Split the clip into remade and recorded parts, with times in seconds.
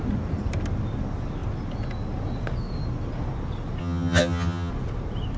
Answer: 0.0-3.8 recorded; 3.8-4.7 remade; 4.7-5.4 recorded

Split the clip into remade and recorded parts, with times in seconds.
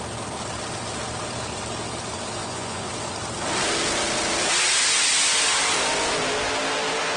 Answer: 0.0-2.4 recorded; 2.4-2.9 remade; 2.9-7.2 recorded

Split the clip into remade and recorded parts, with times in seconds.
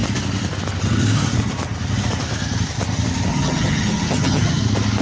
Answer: 0.0-3.3 recorded; 3.3-4.6 remade; 4.6-5.0 recorded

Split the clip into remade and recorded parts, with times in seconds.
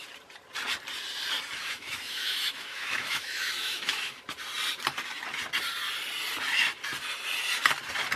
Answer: 0.0-1.6 recorded; 1.6-4.2 remade; 4.2-8.2 recorded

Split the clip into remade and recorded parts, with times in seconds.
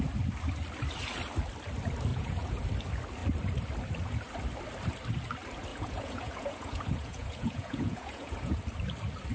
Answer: 0.0-2.1 recorded; 2.1-2.6 remade; 2.6-5.7 recorded; 5.7-8.6 remade; 8.6-9.3 recorded